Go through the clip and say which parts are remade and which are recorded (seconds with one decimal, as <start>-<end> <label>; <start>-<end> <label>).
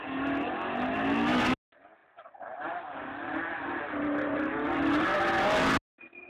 0.0-6.3 recorded